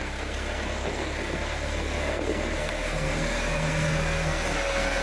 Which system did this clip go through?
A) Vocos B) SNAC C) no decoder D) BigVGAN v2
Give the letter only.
B